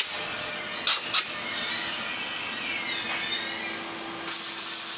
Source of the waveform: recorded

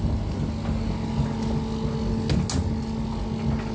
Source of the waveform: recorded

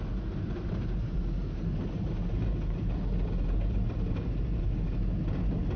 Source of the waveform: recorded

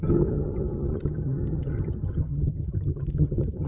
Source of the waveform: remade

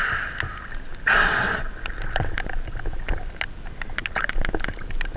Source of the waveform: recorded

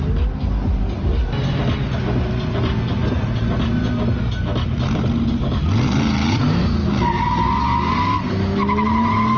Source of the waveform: recorded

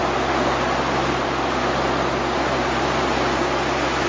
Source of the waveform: recorded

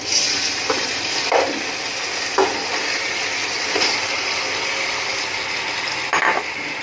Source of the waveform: recorded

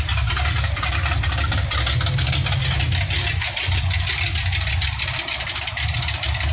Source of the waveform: recorded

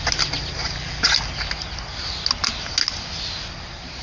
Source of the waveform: recorded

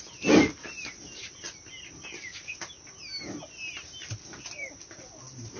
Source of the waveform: recorded